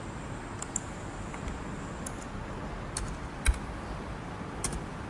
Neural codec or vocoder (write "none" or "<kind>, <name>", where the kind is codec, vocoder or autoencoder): none